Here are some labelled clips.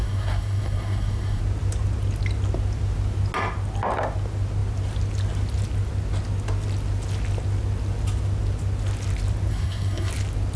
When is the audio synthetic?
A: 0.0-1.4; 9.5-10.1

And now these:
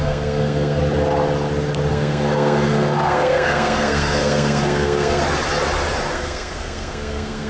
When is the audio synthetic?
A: 0.0-0.8; 1.9-5.2; 6.1-7.5

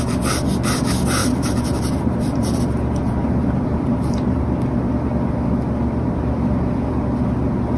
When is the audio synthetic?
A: 1.2-2.6; 3.2-4.4

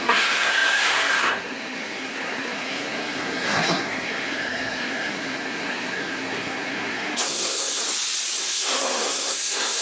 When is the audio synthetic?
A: 0.0-7.8; 8.4-9.8